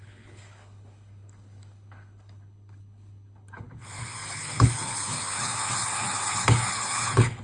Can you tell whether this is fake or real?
fake